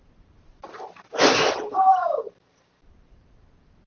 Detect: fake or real fake